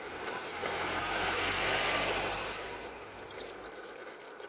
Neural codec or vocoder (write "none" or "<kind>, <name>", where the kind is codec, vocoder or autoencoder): none